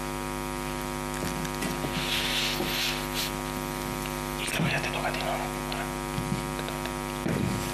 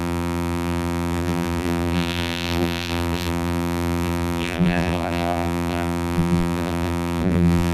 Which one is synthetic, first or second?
second